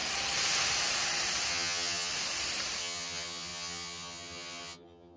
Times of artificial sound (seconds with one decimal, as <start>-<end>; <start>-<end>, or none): 1.5-2.1; 2.8-5.2